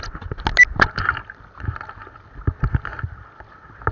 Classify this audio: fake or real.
real